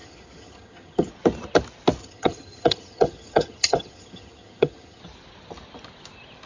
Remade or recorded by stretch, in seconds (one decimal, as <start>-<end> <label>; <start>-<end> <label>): 0.0-1.1 remade; 1.1-2.0 recorded; 2.0-5.0 remade; 5.0-6.5 recorded